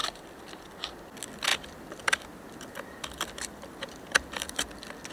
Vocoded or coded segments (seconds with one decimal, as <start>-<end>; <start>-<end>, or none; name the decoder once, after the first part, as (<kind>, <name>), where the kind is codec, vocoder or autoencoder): 0.0-0.9 (vocoder, BigVGAN v2); 1.5-4.6